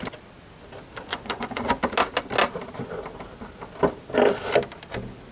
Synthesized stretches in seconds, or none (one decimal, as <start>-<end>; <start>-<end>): 1.1-1.8